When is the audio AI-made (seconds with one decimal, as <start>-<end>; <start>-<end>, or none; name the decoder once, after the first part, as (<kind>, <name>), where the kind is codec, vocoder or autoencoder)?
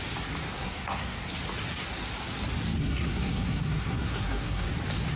0.5-1.3 (codec, SNAC); 2.8-4.7